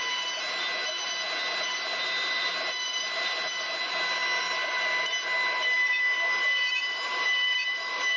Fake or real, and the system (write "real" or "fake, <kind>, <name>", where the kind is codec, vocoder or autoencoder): fake, vocoder, BigVGAN v2